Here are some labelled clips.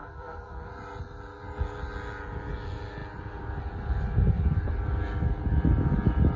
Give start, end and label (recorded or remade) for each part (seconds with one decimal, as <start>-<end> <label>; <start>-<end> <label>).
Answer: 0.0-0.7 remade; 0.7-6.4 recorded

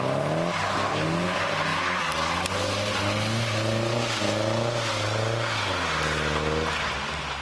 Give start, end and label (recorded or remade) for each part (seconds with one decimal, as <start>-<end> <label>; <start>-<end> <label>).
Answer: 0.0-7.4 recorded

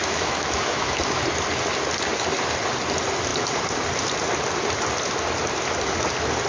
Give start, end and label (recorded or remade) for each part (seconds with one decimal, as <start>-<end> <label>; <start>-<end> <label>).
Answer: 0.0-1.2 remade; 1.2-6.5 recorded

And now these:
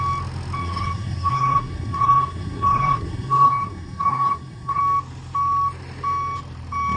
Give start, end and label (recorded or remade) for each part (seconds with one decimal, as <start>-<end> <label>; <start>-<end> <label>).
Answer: 0.0-0.6 recorded; 0.6-4.8 remade; 4.8-7.0 recorded

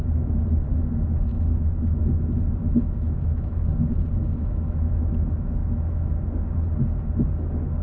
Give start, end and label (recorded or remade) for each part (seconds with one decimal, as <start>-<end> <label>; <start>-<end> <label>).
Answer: 0.0-1.3 recorded; 1.3-2.0 remade; 2.0-2.6 recorded; 2.6-3.5 remade; 3.5-4.2 recorded; 4.2-5.0 remade; 5.0-5.6 recorded; 5.6-6.1 remade; 6.1-7.8 recorded

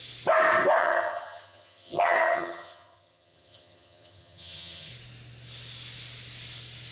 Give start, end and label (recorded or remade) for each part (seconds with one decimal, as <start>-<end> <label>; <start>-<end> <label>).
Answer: 0.0-0.8 recorded; 0.8-4.9 remade; 4.9-6.9 recorded